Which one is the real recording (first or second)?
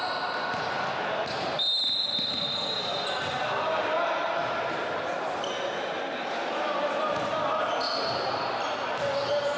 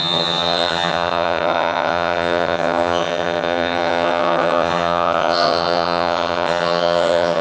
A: first